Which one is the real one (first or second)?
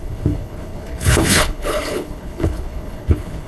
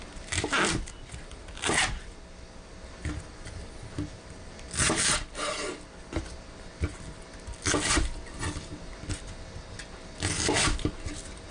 second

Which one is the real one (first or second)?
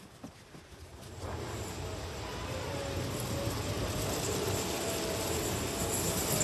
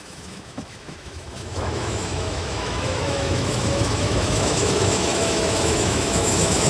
first